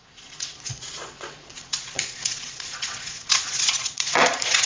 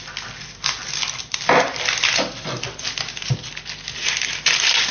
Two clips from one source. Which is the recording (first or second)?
second